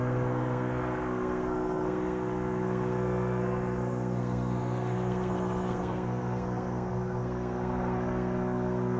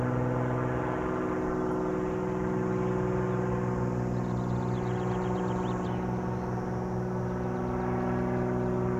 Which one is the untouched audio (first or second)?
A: second